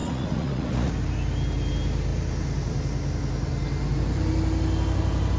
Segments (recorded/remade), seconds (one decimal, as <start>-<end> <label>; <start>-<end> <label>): 0.0-0.9 remade; 0.9-5.4 recorded